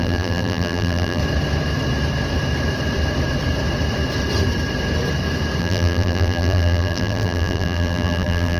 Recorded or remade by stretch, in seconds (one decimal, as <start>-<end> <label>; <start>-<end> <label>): 0.0-1.2 remade; 1.2-5.6 recorded; 5.6-8.6 remade